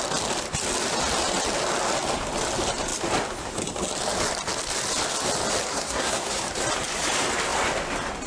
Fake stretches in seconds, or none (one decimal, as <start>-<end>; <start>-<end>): 5.7-6.4